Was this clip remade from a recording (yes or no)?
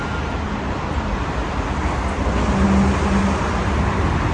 no